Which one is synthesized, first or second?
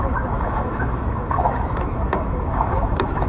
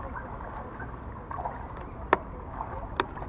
first